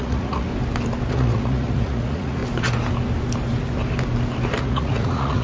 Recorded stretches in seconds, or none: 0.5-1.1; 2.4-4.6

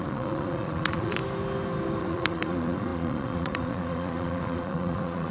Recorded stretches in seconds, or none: 1.2-2.0

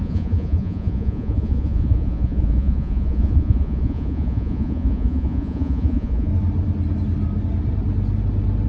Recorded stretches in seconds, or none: 6.3-8.7

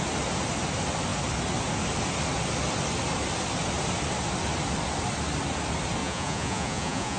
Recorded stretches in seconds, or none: 0.0-6.0

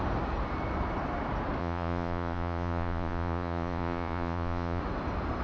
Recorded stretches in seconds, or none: 0.0-1.6; 4.8-5.4

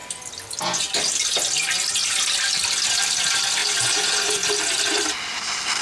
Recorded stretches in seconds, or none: 0.0-3.6; 4.5-5.8